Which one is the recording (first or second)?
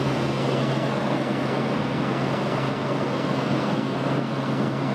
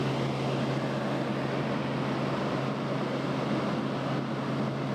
second